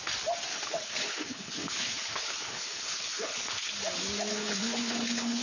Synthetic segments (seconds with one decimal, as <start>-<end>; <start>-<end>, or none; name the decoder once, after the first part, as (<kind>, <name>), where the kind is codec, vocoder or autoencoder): 0.5-3.7 (codec, HILCodec); 4.3-5.4

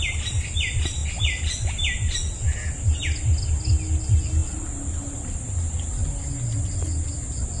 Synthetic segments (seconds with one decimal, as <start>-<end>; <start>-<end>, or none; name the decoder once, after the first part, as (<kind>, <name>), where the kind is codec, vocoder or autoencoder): none

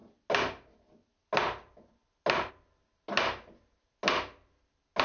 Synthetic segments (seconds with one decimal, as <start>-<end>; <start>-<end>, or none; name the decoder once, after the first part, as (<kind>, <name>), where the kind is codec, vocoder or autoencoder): none

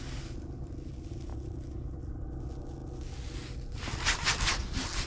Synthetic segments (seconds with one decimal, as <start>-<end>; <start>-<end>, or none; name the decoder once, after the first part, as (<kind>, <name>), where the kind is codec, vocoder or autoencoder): none

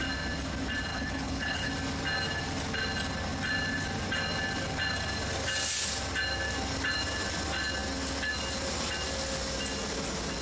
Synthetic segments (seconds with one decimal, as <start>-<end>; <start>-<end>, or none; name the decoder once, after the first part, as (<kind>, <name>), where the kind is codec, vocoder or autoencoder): 0.9-1.7 (codec, HILCodec)

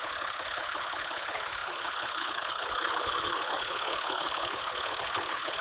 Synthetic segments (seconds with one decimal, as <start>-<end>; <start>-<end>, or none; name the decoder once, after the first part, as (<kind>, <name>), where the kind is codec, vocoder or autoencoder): 0.0-5.6 (codec, HILCodec)

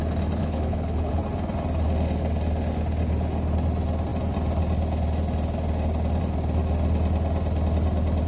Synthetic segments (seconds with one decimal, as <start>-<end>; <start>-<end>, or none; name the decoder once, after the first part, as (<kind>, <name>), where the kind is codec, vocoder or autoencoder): 0.4-1.1 (codec, HILCodec)